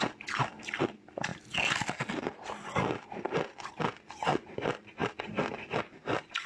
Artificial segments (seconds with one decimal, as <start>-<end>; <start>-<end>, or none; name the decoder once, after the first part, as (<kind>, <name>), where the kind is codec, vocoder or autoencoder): none